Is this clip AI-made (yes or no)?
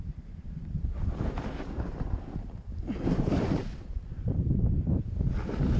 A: yes